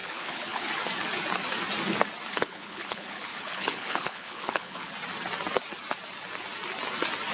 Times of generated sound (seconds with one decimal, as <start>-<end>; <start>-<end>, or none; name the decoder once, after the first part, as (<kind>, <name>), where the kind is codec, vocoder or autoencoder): 0.0-0.7 (codec, HILCodec); 2.3-4.9